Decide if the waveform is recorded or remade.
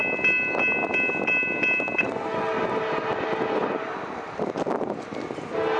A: recorded